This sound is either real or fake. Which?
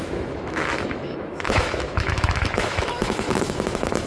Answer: fake